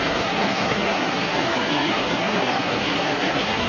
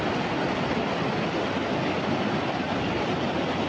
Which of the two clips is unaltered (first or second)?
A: second